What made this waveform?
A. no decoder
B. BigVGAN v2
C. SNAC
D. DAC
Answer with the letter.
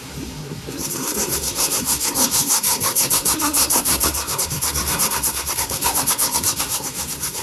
C